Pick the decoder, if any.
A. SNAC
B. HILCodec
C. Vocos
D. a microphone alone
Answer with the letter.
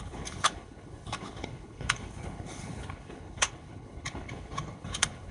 B